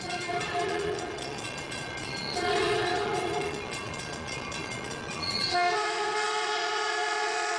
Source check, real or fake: fake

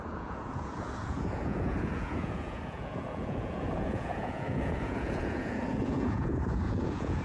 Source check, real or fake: fake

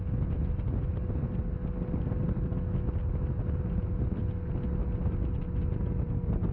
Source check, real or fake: real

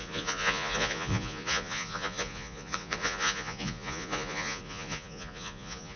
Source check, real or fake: fake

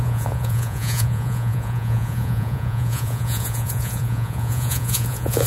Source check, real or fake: fake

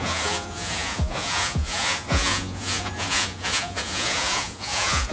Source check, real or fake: fake